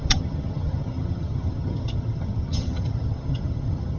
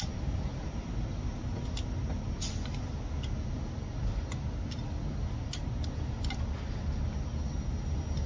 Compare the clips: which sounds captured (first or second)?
second